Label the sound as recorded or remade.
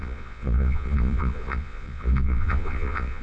remade